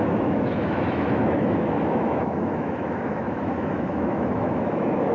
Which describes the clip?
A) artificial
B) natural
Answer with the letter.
A